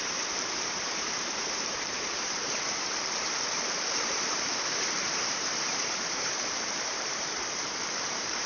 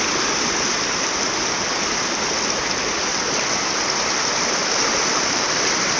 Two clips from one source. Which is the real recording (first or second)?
second